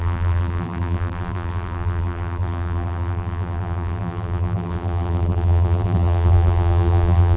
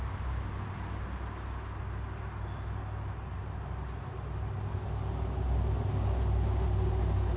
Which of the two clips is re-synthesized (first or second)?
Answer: first